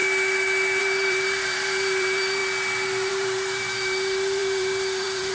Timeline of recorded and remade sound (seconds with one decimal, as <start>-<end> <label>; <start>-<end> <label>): 0.0-0.8 recorded; 0.8-2.4 remade; 2.4-3.1 recorded; 3.1-5.3 remade